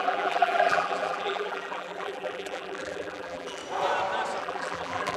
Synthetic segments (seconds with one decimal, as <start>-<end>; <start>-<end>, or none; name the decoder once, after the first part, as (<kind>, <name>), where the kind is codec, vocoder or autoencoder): 0.0-3.6 (vocoder, BigVGAN v2); 4.4-5.2